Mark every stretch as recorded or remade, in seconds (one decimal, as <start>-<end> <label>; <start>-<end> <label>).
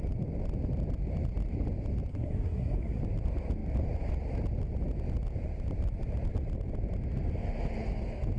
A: 0.0-2.1 recorded; 2.1-3.0 remade; 3.0-8.4 recorded